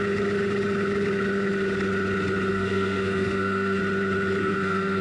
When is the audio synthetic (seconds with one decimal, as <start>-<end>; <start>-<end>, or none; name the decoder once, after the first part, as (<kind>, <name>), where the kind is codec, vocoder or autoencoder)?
2.5-3.8 (codec, SNAC); 4.4-5.0